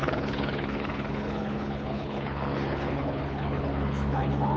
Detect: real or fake fake